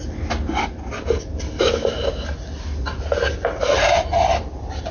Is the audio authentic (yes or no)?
yes